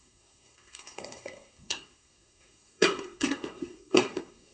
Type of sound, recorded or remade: remade